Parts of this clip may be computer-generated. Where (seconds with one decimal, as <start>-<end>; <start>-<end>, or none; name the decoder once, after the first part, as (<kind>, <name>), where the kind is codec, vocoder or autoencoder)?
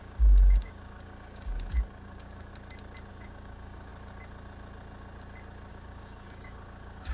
0.0-2.5 (codec, DAC); 3.1-3.9; 5.7-7.1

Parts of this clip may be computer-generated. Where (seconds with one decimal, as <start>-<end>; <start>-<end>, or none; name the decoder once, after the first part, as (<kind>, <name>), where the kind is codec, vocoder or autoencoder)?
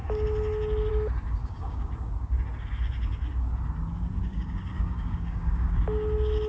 1.4-2.1 (codec, DAC); 4.3-5.8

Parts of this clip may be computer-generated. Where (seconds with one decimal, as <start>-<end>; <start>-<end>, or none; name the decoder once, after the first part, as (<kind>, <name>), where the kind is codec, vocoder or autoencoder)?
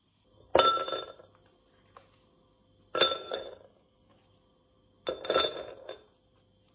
3.3-4.2 (codec, DAC)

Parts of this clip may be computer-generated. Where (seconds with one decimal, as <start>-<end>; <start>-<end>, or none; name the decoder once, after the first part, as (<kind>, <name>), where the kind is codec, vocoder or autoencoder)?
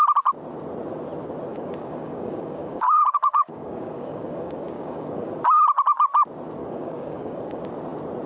1.5-5.3 (codec, DAC); 6.6-7.6